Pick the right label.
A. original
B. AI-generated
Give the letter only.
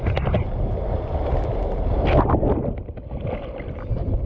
A